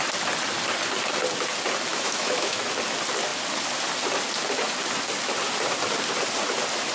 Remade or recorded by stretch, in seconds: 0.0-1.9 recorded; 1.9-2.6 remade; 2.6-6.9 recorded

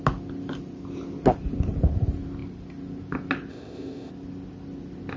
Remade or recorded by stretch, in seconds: 0.0-3.5 recorded; 3.5-4.1 remade; 4.1-5.2 recorded

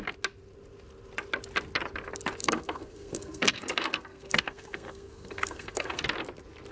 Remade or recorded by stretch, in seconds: 0.0-2.4 recorded; 2.4-6.0 remade; 6.0-6.7 recorded

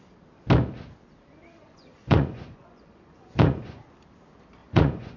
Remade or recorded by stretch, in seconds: 0.0-1.6 recorded; 1.6-3.8 remade; 3.8-4.6 recorded; 4.6-5.2 remade

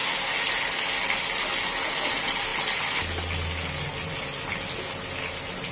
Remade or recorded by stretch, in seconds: 0.0-5.7 recorded

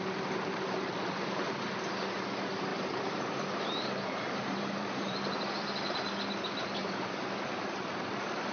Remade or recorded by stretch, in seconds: 0.0-2.7 recorded; 2.7-5.5 remade; 5.5-6.8 recorded; 6.8-8.1 remade; 8.1-8.5 recorded

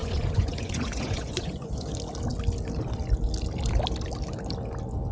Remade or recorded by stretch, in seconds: 0.0-1.9 remade; 1.9-5.1 recorded

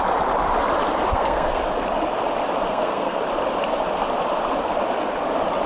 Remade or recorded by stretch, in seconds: 0.0-1.1 recorded; 1.1-1.6 remade; 1.6-2.7 recorded; 2.7-3.2 remade; 3.2-5.7 recorded